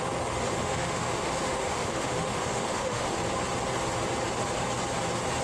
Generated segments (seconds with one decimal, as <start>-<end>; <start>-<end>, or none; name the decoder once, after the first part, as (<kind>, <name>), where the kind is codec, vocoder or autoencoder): 0.6-3.2 (autoencoder, DAC-VAE)